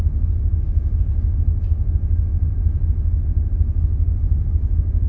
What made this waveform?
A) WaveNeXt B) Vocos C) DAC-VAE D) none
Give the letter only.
D